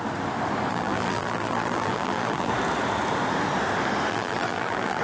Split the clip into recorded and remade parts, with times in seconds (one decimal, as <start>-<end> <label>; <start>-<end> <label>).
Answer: 0.0-0.7 recorded; 0.7-2.5 remade; 2.5-4.1 recorded; 4.1-5.0 remade